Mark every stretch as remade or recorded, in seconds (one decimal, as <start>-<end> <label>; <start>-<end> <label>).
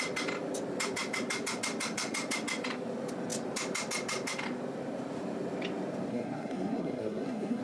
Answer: 0.0-6.1 recorded; 6.1-7.6 remade